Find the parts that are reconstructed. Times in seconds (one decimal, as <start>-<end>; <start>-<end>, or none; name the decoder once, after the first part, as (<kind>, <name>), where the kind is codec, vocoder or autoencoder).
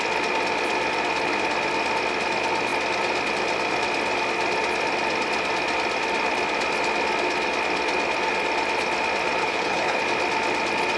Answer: 9.4-10.0 (codec, HILCodec)